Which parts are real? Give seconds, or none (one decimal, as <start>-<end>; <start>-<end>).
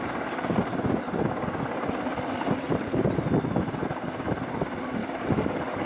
0.0-5.0